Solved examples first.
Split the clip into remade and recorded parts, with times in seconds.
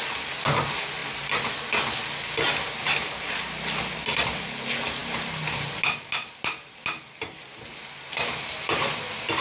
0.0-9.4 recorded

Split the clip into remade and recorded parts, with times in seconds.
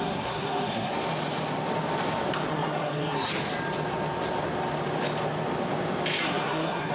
0.0-0.9 remade; 0.9-2.5 recorded; 2.5-3.3 remade; 3.3-6.2 recorded; 6.2-6.9 remade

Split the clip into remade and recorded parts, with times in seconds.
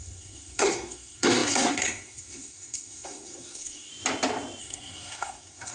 0.0-3.9 remade; 3.9-4.6 recorded; 4.6-5.7 remade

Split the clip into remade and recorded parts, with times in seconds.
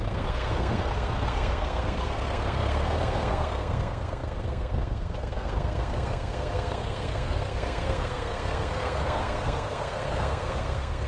0.0-11.1 remade